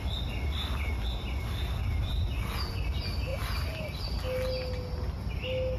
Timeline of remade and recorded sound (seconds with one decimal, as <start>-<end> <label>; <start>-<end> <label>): 0.0-5.8 recorded